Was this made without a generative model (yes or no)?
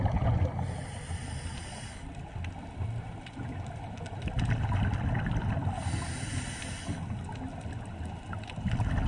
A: yes